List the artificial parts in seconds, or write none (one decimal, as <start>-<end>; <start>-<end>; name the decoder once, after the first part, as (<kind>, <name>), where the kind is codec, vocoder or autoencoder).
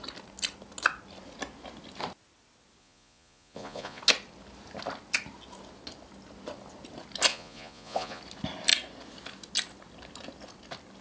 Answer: 2.8-4.0 (vocoder, Vocos); 7.3-8.2